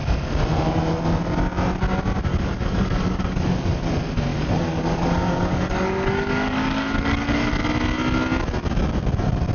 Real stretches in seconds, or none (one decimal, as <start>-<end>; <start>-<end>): 0.0-2.3; 3.9-4.3; 7.5-9.5

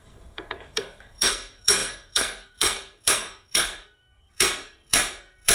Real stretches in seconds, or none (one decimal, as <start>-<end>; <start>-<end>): none

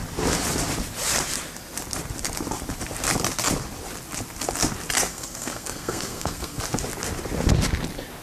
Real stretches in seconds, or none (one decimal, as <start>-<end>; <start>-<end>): 0.0-5.1; 6.6-8.2

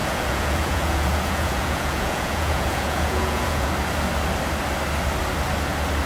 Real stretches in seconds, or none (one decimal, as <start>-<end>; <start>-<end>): 3.7-6.1

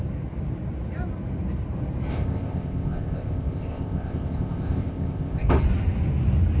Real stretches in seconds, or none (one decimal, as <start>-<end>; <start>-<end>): 0.0-2.1; 5.5-6.6

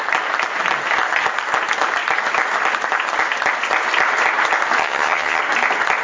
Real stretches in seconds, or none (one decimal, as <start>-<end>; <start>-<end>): 0.0-4.8; 5.4-6.0

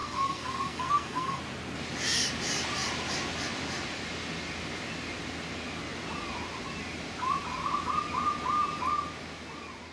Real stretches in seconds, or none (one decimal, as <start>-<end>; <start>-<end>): 1.4-9.9

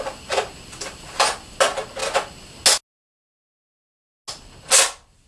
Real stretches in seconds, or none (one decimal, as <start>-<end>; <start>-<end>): 0.0-5.3